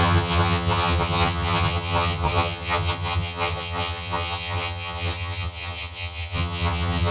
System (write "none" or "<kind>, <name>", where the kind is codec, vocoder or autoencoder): vocoder, HiFi-GAN